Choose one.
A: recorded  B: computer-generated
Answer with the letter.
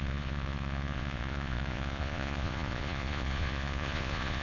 B